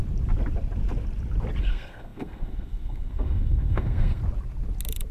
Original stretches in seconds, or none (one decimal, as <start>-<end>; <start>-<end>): 0.0-1.6; 4.2-5.1